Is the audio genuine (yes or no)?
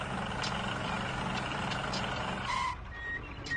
yes